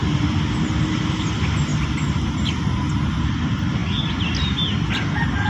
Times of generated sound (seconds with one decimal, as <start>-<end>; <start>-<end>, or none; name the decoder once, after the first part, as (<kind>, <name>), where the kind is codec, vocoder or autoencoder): none

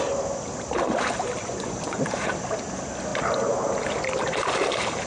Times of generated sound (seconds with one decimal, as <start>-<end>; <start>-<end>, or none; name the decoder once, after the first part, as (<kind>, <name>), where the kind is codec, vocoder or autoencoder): 1.4-2.0 (vocoder, Vocos)